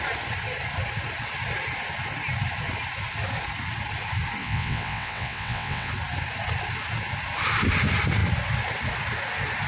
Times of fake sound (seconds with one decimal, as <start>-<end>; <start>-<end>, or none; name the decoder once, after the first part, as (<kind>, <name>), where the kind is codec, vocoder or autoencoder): 4.4-5.9 (vocoder, WaveNeXt)